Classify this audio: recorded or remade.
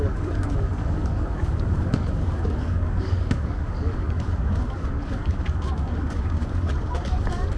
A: remade